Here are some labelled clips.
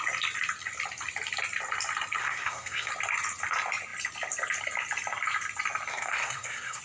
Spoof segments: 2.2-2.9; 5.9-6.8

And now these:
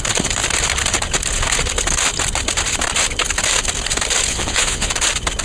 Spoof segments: 4.3-4.9

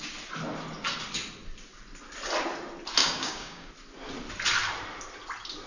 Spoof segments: 3.0-3.7